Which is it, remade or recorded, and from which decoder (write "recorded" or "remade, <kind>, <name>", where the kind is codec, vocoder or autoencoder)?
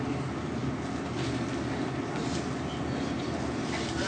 recorded